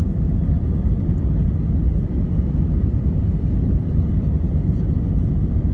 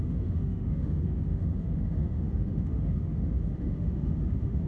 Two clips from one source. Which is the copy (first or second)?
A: second